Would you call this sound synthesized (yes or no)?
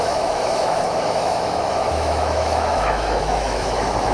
yes